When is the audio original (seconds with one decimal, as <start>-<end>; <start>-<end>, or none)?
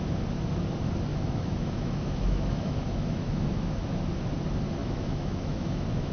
0.0-1.1; 4.0-4.8